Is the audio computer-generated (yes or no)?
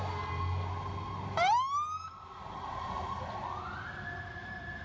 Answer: no